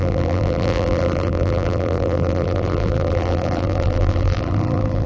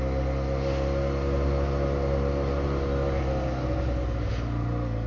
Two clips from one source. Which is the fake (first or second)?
first